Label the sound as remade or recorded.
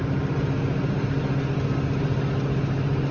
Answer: recorded